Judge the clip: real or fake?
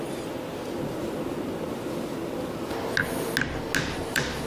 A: real